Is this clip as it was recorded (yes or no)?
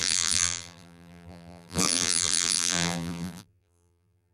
no